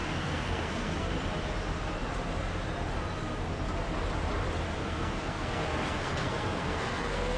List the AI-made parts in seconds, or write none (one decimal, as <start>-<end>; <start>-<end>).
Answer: 0.0-1.1; 4.8-7.4